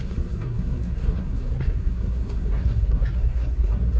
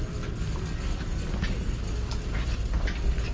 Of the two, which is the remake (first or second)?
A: first